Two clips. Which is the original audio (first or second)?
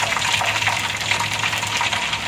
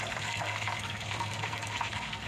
first